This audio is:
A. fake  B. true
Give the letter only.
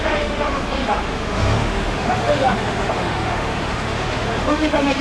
A